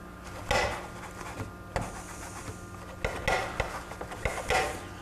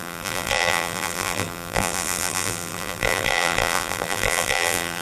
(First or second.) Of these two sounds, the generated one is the second